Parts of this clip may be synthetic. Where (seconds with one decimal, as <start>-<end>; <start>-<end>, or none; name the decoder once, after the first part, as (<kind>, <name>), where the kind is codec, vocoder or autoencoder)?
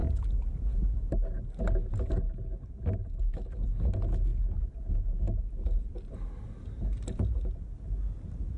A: none